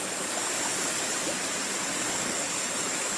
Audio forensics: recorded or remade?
recorded